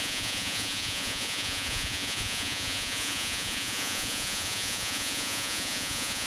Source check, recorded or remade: remade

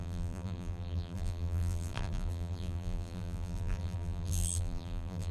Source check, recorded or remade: remade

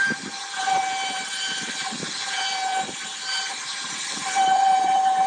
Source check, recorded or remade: remade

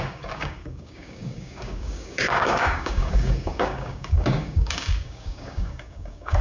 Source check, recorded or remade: remade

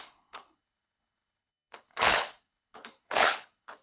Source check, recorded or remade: remade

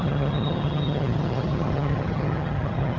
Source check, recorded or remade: remade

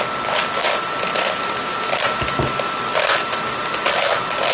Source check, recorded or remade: recorded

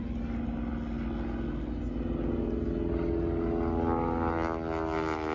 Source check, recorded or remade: recorded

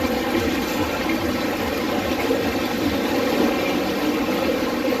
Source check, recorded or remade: recorded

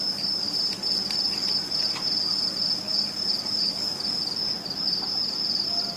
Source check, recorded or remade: recorded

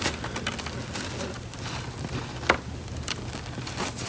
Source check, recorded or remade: recorded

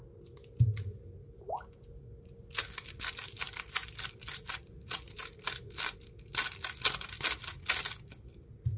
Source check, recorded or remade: recorded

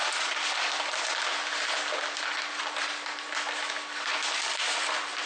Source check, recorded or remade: recorded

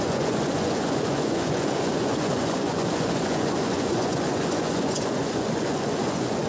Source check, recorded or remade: remade